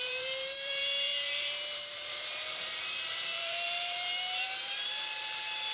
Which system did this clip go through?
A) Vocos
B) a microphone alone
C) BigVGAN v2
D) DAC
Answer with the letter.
C